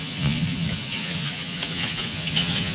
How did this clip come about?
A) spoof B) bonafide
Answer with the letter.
A